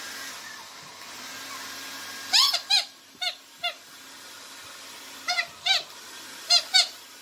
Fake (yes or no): no